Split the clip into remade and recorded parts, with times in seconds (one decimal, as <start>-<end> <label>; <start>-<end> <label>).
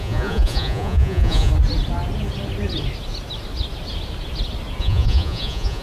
0.0-1.5 remade; 1.5-4.8 recorded; 4.8-5.8 remade